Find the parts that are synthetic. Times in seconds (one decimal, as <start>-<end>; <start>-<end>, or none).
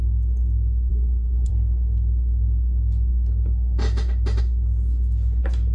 0.9-1.5